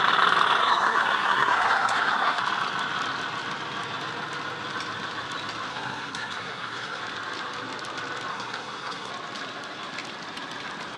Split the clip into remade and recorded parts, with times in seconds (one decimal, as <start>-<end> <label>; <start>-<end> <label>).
0.0-0.6 recorded; 0.6-2.4 remade; 2.4-5.7 recorded; 5.7-7.0 remade; 7.0-8.3 recorded; 8.3-9.1 remade; 9.1-11.0 recorded